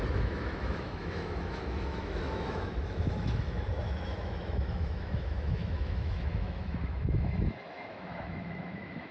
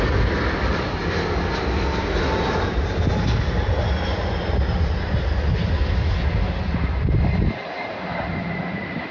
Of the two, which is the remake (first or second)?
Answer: first